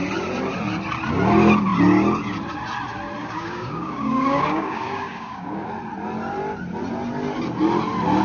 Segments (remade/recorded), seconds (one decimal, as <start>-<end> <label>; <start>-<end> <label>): 0.0-3.2 recorded; 3.2-5.7 remade; 5.7-8.2 recorded